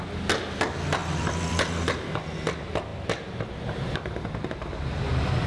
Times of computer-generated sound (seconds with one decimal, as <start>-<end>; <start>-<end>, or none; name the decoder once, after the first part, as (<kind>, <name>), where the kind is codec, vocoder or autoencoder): 1.0-2.1 (vocoder, BigVGAN v2); 2.9-4.1